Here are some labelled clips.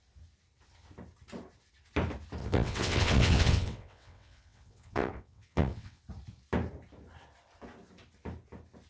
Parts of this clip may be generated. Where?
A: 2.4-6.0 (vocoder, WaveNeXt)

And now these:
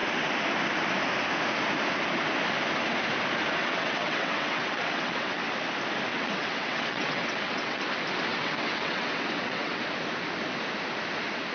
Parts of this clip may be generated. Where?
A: 3.6-5.5 (vocoder, WaveNeXt); 6.1-7.8; 8.3-9.8

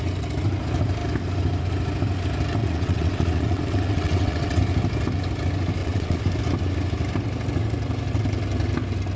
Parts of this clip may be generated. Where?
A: 2.6-4.6 (vocoder, WaveNeXt); 5.8-6.3